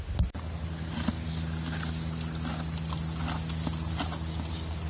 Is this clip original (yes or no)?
yes